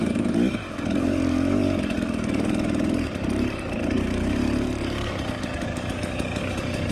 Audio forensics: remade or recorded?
remade